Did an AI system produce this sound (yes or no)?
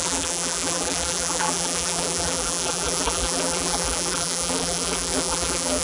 yes